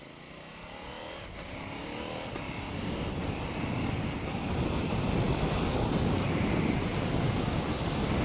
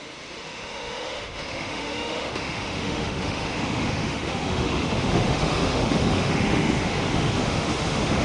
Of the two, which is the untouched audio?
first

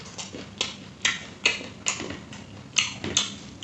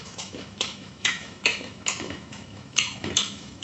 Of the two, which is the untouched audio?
first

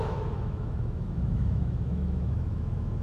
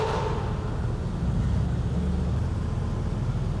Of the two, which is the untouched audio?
second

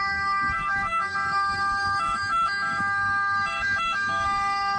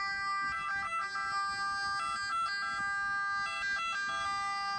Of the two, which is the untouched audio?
second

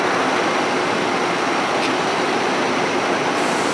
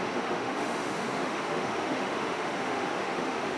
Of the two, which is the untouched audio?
first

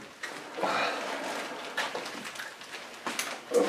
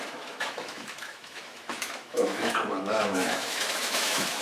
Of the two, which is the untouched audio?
first